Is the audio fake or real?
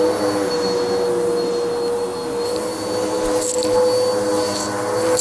real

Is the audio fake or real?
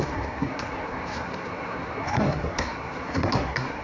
fake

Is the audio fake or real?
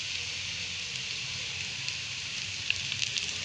real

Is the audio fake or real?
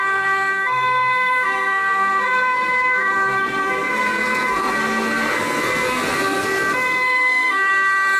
fake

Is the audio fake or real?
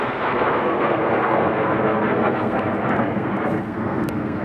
fake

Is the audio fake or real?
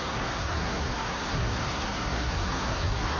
fake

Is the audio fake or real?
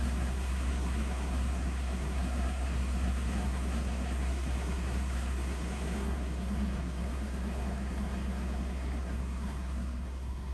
fake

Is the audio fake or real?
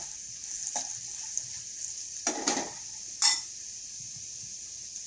real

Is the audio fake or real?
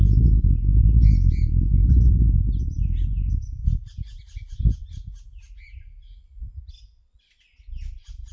real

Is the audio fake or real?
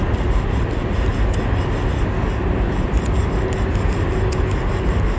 real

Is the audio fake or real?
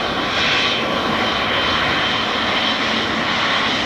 real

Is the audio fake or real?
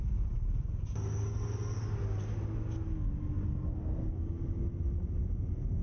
real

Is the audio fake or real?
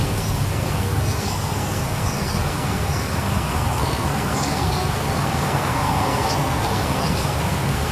fake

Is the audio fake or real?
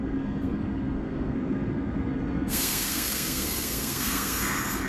fake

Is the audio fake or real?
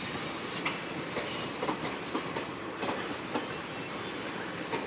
real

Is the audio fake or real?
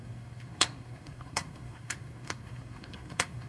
fake